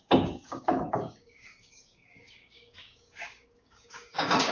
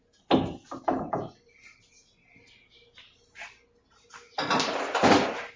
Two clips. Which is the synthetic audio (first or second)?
first